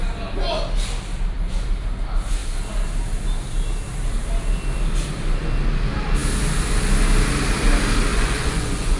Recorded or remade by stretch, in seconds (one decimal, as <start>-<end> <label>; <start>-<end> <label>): 0.0-8.1 recorded; 8.1-9.0 remade